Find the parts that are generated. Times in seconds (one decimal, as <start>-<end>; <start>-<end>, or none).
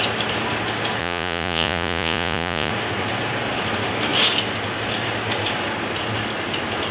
1.0-2.7